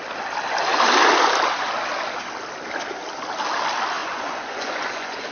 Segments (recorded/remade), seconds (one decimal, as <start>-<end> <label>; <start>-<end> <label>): 0.0-4.0 recorded; 4.0-5.3 remade